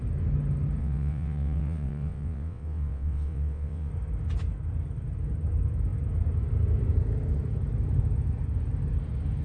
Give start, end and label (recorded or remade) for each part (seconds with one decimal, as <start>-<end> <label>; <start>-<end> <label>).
0.0-0.8 recorded; 0.8-3.9 remade; 3.9-9.4 recorded